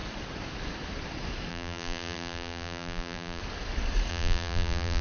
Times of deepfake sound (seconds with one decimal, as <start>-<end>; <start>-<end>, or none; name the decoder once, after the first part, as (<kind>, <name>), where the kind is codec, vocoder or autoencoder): 1.5-3.4 (vocoder, BigVGAN v2); 4.1-5.0

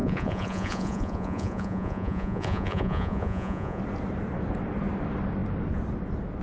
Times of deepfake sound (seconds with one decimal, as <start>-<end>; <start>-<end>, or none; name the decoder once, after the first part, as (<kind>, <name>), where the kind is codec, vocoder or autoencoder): 0.0-3.8 (vocoder, Vocos)

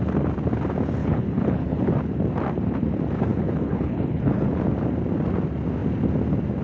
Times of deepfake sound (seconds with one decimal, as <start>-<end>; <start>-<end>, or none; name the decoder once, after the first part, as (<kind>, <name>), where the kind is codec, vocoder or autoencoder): 1.0-1.9 (codec, HILCodec); 3.3-4.6

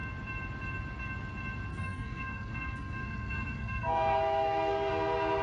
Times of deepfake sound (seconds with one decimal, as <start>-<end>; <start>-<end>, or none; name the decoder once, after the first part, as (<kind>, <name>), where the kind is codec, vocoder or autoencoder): 1.7-4.9 (codec, SNAC)